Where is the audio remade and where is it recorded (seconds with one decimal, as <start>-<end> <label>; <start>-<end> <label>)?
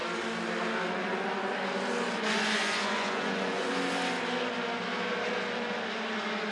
0.0-2.2 recorded; 2.2-3.7 remade; 3.7-6.5 recorded